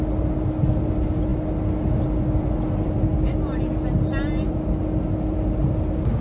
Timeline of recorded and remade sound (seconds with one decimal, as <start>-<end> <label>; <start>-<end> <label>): 0.0-6.2 recorded

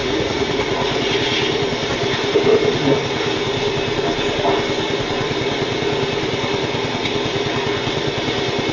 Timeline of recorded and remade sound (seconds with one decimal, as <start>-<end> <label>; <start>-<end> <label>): 0.0-1.1 remade; 1.1-8.7 recorded

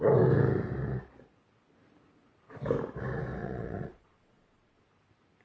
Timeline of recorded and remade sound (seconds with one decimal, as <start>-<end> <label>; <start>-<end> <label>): 0.0-3.4 recorded; 3.4-4.8 remade; 4.8-5.4 recorded

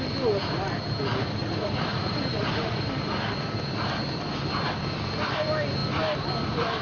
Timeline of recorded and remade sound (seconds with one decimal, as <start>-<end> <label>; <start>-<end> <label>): 0.0-1.4 recorded; 1.4-2.8 remade; 2.8-6.8 recorded